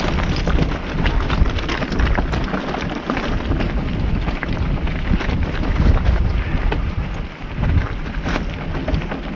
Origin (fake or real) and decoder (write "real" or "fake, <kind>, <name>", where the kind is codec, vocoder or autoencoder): real